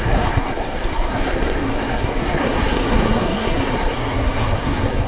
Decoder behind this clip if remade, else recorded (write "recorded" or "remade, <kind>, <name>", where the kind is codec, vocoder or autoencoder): remade, codec, SNAC